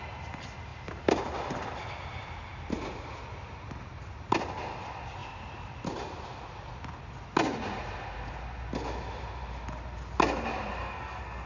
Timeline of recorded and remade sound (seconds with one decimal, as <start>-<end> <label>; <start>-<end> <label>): 0.0-10.8 recorded; 10.8-11.5 remade